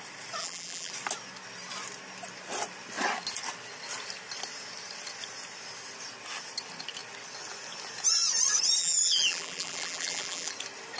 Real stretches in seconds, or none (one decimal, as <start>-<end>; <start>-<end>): 0.0-0.4; 0.9-8.8; 10.5-11.0